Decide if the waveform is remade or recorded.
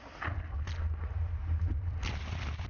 recorded